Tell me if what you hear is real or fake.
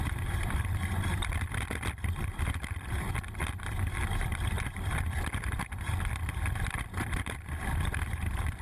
fake